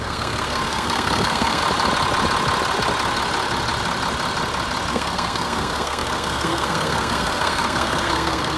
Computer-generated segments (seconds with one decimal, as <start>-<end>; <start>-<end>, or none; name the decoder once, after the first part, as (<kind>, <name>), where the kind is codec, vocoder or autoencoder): 0.0-1.6 (codec, SNAC); 4.9-8.6